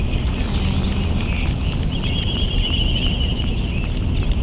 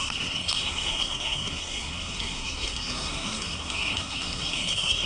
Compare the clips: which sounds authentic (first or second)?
first